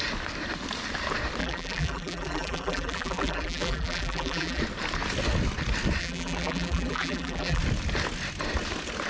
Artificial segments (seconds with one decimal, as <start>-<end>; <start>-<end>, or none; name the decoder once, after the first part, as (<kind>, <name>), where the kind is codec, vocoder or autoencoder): 1.4-4.6 (vocoder, BigVGAN v2); 6.0-7.6